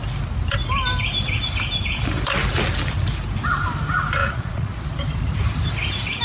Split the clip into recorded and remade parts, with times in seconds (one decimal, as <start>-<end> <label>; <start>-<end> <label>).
0.0-4.2 recorded; 4.2-4.8 remade; 4.8-6.2 recorded